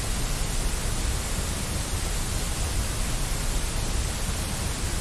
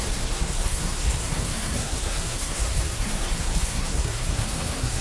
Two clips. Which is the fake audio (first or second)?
second